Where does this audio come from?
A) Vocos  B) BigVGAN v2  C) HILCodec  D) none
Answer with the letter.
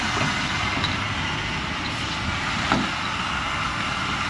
D